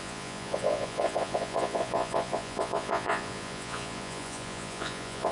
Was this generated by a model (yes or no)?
yes